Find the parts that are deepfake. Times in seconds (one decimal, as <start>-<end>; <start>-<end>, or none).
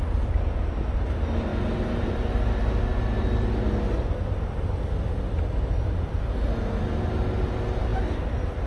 none